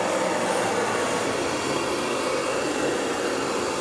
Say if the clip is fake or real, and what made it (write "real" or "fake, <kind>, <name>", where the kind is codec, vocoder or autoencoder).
real